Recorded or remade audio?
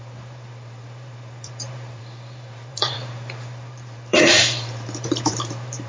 remade